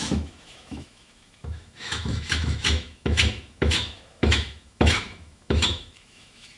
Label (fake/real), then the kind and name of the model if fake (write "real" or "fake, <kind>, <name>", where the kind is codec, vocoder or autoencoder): fake, autoencoder, DAC-VAE